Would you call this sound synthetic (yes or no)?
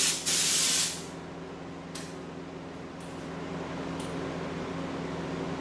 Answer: no